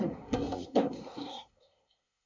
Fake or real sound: fake